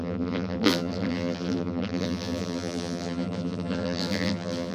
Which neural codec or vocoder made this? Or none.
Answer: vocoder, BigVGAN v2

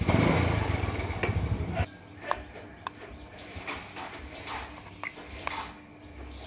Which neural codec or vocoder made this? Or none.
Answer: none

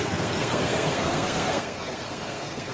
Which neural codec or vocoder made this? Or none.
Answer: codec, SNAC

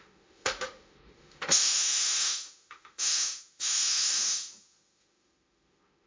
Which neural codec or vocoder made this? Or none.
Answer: autoencoder, DAC-VAE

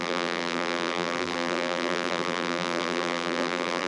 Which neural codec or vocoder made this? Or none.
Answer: vocoder, BigVGAN v2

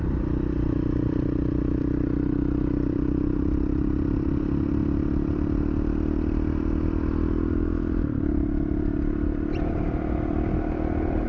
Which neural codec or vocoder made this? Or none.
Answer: vocoder, BigVGAN v2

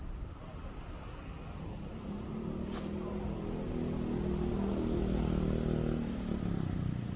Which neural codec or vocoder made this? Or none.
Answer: none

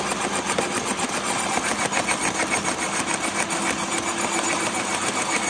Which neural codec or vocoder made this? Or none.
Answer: none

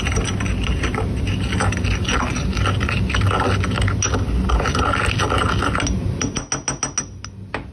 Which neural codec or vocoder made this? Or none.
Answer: none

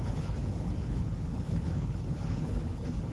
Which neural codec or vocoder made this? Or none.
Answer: codec, HILCodec